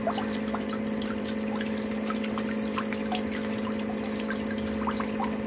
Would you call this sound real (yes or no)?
yes